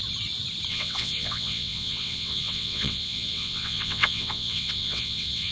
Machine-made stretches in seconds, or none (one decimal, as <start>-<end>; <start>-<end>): 0.7-5.5